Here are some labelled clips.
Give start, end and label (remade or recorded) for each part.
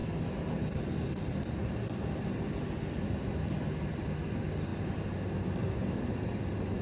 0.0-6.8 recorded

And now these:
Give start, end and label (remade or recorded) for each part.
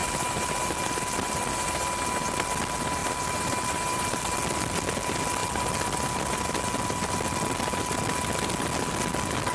0.0-1.7 remade; 1.7-3.0 recorded; 3.0-4.2 remade; 4.2-5.4 recorded; 5.4-6.6 remade; 6.6-9.5 recorded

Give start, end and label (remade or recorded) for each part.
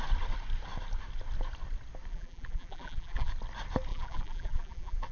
0.0-2.1 recorded; 2.1-3.3 remade; 3.3-3.9 recorded; 3.9-5.1 remade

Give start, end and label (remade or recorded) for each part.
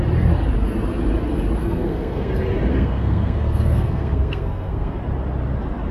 0.0-1.6 recorded; 1.6-2.3 remade; 2.3-2.7 recorded; 2.7-5.0 remade; 5.0-5.9 recorded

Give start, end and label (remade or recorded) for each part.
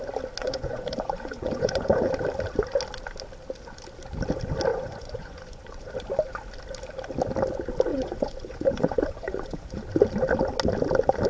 0.0-0.4 recorded; 0.4-2.1 remade; 2.1-4.7 recorded; 4.7-5.9 remade; 5.9-7.9 recorded; 7.9-9.8 remade; 9.8-11.3 recorded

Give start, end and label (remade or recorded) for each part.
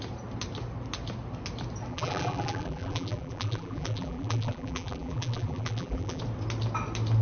0.0-1.9 recorded; 1.9-6.2 remade; 6.2-7.2 recorded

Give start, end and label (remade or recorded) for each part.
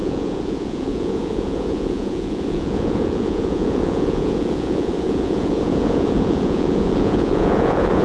0.0-8.0 remade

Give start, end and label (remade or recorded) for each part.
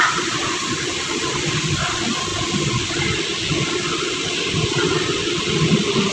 0.0-6.1 recorded